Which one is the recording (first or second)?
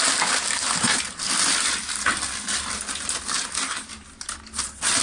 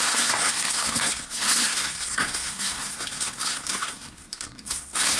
first